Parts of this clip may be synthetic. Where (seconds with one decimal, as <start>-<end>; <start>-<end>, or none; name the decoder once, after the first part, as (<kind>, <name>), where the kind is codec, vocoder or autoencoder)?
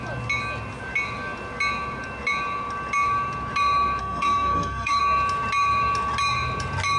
4.0-5.0 (codec, SNAC)